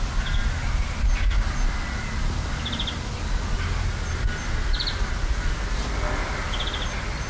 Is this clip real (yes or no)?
yes